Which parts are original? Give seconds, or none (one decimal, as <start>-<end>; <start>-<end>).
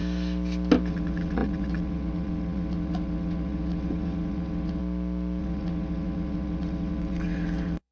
0.0-0.9; 4.8-5.4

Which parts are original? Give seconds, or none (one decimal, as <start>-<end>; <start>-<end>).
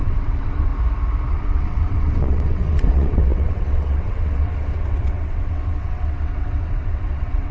0.7-1.3